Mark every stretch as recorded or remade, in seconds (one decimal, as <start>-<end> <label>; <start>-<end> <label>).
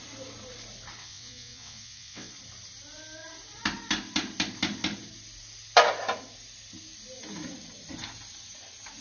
0.0-1.0 recorded; 1.0-2.3 remade; 2.3-9.0 recorded